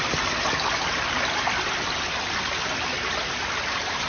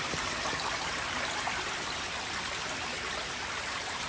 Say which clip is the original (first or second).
first